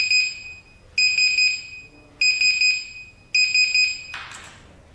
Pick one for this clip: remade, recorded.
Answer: recorded